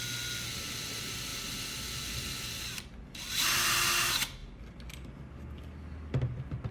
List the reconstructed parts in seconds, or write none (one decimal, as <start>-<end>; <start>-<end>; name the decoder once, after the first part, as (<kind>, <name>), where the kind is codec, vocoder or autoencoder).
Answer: none

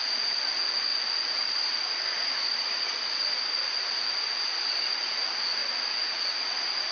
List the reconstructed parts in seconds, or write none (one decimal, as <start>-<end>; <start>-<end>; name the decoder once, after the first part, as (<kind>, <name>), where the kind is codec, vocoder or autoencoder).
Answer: 0.9-5.0 (vocoder, BigVGAN v2)

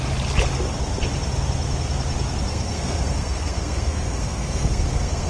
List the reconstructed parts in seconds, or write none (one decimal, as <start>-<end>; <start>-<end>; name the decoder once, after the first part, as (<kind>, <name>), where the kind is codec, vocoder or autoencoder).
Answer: 2.5-5.3 (codec, SNAC)

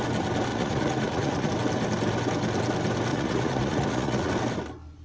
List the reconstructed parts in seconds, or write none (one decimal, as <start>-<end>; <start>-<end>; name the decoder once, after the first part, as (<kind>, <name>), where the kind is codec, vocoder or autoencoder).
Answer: 0.5-1.5 (vocoder, Vocos); 3.1-4.3

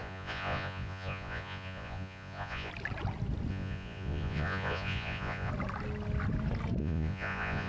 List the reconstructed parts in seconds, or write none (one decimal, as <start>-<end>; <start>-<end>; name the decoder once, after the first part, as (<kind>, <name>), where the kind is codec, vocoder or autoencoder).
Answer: 0.0-2.7 (vocoder, Vocos); 3.5-5.5; 6.8-7.7